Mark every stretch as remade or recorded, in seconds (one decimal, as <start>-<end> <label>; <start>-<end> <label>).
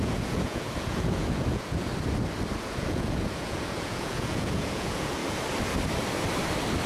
0.0-1.9 remade; 1.9-2.6 recorded; 2.6-5.2 remade; 5.2-6.9 recorded